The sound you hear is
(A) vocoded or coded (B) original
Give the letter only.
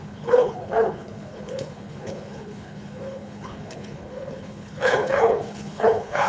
A